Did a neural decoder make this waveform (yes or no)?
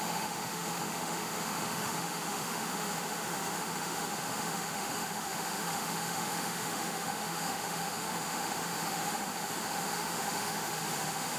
yes